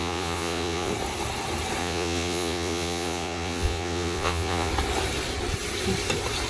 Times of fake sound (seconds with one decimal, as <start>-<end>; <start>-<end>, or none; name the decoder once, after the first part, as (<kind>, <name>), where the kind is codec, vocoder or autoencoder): 0.0-0.9 (vocoder, Vocos); 1.8-4.7

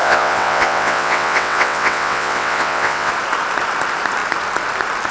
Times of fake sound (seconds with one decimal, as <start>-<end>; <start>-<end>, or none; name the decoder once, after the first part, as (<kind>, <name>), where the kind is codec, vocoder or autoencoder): 0.0-3.1 (vocoder, WaveNeXt)

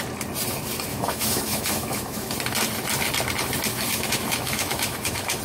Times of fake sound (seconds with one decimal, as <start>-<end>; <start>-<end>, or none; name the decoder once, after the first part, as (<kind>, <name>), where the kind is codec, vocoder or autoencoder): 0.9-2.3 (autoencoder, DAC-VAE); 3.7-5.4